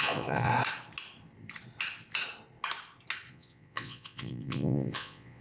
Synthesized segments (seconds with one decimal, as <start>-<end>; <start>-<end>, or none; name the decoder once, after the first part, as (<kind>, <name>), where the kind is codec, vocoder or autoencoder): 0.0-0.5 (vocoder, Vocos); 3.3-5.4

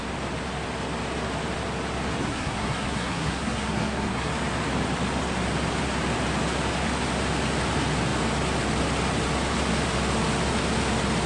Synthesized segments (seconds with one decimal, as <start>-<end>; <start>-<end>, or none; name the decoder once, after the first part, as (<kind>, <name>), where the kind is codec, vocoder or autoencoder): 2.2-4.3 (codec, SNAC)